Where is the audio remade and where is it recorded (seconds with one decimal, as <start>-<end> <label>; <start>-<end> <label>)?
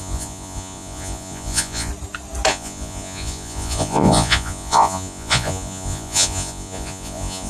0.0-1.9 remade; 1.9-2.5 recorded; 2.5-7.5 remade